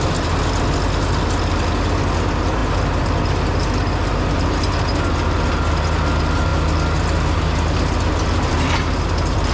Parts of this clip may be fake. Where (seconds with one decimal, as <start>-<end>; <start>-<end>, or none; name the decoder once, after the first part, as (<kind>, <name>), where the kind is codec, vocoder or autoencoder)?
none